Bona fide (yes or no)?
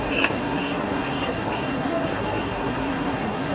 no